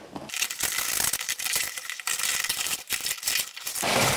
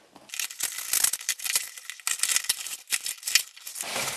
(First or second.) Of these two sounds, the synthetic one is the first